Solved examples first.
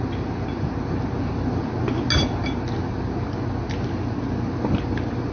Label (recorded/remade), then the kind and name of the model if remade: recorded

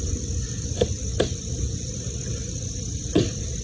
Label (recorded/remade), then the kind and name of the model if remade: recorded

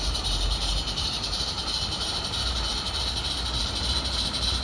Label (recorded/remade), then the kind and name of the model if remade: remade, vocoder, BigVGAN v2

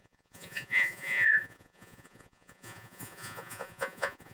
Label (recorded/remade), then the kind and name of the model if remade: remade, vocoder, Vocos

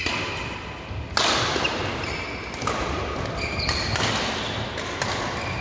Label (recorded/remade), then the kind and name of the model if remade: recorded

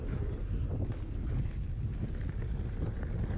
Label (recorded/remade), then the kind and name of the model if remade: recorded